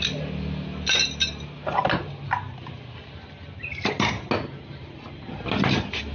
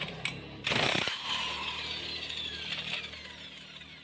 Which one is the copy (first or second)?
second